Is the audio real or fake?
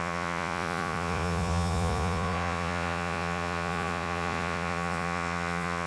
fake